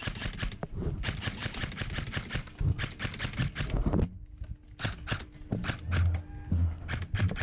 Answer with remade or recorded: recorded